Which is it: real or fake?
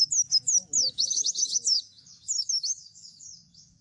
fake